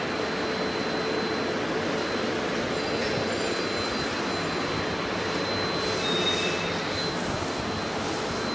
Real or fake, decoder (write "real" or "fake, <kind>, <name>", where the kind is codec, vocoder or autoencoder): real